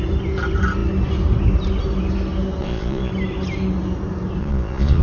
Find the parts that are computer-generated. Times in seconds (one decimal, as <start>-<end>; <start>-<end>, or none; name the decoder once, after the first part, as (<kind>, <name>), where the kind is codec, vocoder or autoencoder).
2.6-3.1 (vocoder, Vocos); 4.4-5.0